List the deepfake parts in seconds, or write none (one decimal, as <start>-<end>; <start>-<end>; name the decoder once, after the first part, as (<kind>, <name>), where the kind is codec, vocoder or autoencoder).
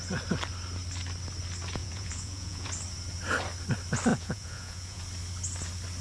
1.8-2.7 (vocoder, Vocos); 4.1-5.0